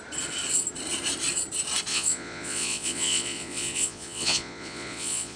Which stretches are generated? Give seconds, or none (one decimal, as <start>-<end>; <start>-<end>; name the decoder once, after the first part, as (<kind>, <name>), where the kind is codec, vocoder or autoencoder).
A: 1.9-5.4 (vocoder, Vocos)